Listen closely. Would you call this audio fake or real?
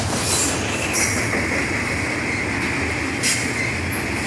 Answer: real